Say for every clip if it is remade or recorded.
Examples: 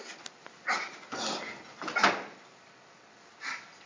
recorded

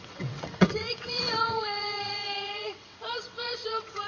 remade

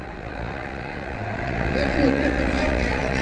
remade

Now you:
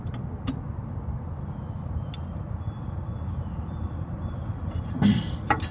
recorded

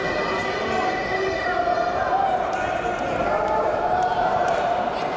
recorded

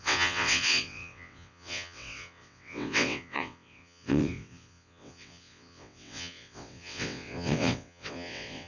remade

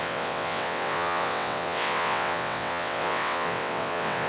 remade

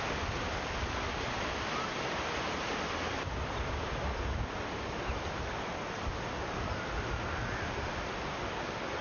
recorded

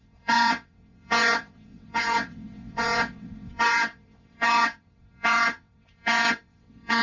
remade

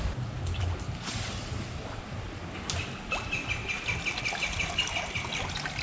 recorded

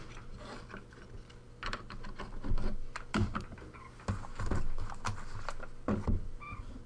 recorded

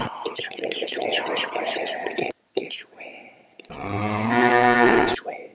remade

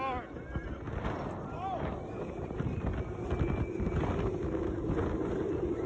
recorded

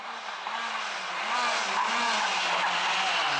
recorded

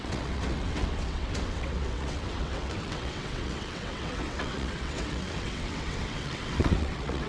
remade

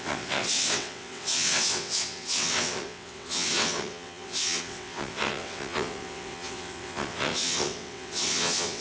remade